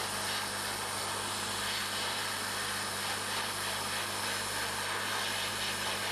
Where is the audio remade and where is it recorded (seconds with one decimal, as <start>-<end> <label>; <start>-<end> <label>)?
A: 0.0-6.1 recorded